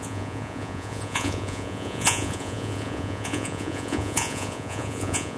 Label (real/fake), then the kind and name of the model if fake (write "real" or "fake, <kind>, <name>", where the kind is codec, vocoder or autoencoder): fake, vocoder, Vocos